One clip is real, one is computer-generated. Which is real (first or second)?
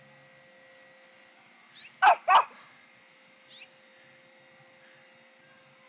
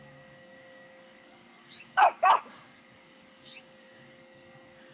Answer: first